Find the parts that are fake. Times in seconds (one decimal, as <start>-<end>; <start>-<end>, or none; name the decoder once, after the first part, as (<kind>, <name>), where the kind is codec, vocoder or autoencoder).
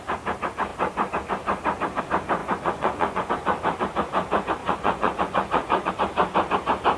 2.4-3.3 (vocoder, Vocos); 4.6-5.9